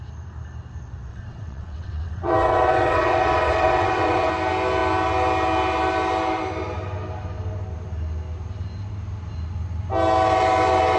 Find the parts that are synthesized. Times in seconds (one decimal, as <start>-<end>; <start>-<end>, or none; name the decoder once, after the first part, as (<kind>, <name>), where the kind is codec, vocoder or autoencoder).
1.1-4.3 (vocoder, WaveNeXt)